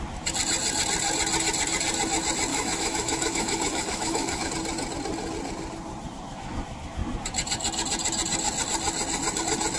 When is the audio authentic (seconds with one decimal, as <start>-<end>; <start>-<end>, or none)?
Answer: 0.0-2.5; 4.5-9.8